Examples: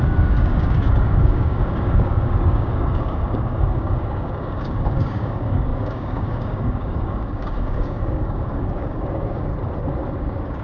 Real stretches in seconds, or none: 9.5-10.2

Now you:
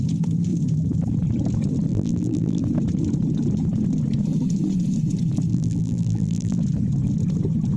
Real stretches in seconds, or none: 0.0-1.9; 2.6-5.5; 6.6-7.8

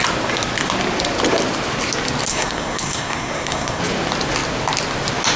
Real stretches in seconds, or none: 0.0-2.3; 3.8-5.4

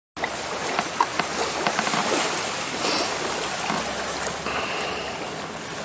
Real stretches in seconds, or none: 0.0-5.8

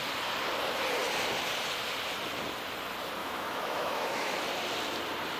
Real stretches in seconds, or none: 0.0-3.2; 4.4-5.4

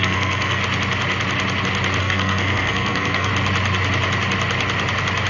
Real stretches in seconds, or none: 0.6-2.0; 3.3-5.3

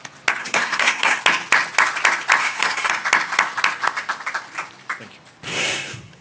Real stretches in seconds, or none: 0.0-0.4; 1.2-2.4; 2.9-5.5

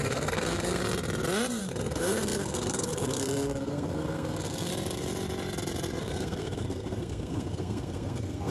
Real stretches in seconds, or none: 0.8-1.6; 4.7-6.0